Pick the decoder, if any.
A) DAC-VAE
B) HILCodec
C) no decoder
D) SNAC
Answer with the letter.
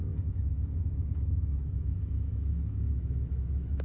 A